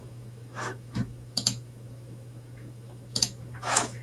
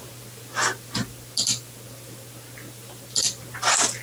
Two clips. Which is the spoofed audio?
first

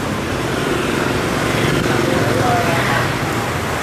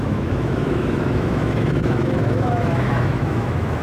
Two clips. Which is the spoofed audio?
second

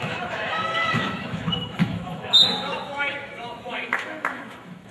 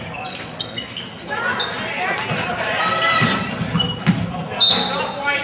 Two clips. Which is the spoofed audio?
first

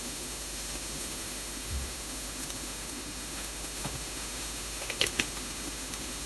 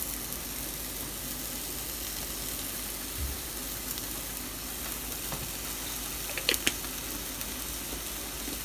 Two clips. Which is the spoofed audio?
first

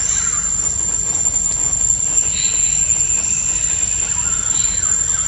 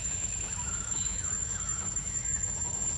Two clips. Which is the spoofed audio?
second